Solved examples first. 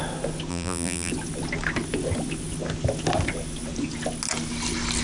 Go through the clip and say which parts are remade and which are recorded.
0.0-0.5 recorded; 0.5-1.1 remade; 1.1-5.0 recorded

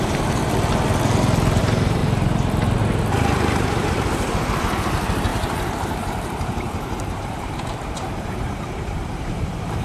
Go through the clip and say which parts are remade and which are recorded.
0.0-0.4 remade; 0.4-1.6 recorded; 1.6-2.0 remade; 2.0-3.1 recorded; 3.1-9.8 remade

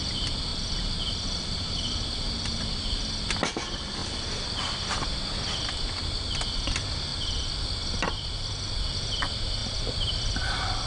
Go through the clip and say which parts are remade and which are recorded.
0.0-0.5 recorded; 0.5-3.0 remade; 3.0-9.6 recorded; 9.6-10.3 remade; 10.3-10.9 recorded

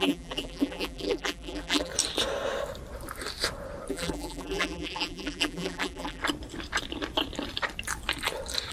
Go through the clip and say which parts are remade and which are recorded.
0.0-1.9 remade; 1.9-3.9 recorded; 3.9-6.2 remade; 6.2-8.7 recorded

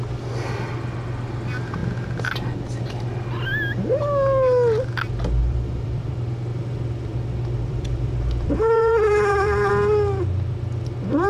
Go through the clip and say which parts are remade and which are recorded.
0.0-5.4 recorded; 5.4-6.1 remade; 6.1-6.5 recorded; 6.5-9.7 remade; 9.7-11.3 recorded

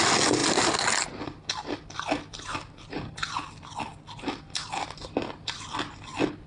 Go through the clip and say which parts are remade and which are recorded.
0.0-6.5 recorded

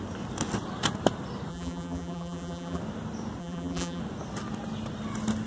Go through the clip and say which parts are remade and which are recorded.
0.0-1.5 recorded; 1.5-2.8 remade; 2.8-3.4 recorded; 3.4-4.0 remade; 4.0-5.5 recorded